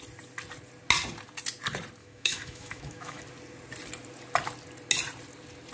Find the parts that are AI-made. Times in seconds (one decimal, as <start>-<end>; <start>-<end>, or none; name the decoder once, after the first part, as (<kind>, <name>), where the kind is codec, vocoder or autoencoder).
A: 2.0-3.2 (autoencoder, DAC-VAE)